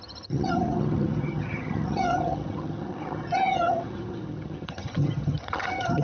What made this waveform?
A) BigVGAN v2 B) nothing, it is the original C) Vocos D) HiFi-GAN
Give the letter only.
D